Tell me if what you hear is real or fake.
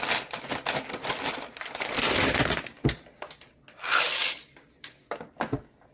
real